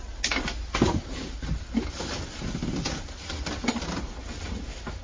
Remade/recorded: recorded